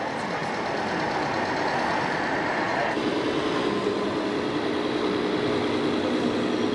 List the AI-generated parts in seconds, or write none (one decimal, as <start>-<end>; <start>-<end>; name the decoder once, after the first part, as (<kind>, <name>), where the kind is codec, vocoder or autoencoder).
none